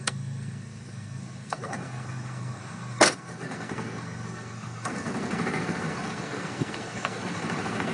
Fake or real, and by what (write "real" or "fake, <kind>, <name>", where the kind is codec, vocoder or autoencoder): fake, codec, SNAC